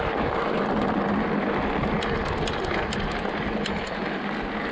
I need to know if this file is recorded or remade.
recorded